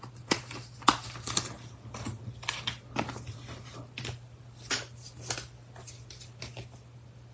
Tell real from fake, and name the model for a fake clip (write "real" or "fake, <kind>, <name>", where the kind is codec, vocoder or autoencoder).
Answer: real